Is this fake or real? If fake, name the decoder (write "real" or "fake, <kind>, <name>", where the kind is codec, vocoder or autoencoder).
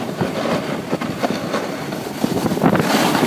real